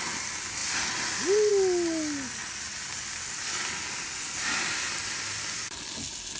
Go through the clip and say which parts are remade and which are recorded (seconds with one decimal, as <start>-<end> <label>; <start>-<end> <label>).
0.0-6.4 recorded